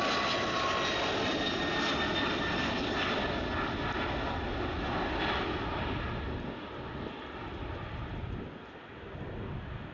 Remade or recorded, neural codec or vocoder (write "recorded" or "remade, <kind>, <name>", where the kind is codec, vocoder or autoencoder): recorded